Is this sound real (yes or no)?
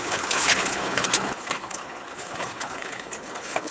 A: no